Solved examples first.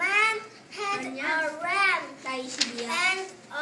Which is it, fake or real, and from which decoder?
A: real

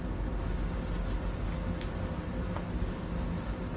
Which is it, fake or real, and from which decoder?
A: real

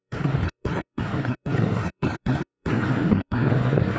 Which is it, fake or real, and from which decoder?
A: fake, codec, SNAC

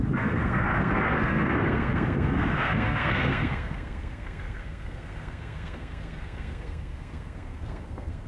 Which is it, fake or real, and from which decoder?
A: fake, codec, SNAC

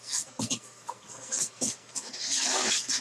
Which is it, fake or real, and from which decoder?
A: fake, codec, SNAC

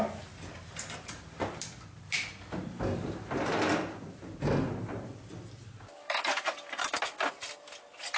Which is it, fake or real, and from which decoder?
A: real